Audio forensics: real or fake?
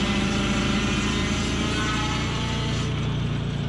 real